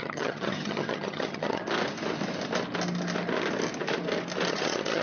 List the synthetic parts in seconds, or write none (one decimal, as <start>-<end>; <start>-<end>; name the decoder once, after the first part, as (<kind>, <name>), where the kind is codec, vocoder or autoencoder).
0.0-1.6 (vocoder, HiFi-GAN); 4.5-5.0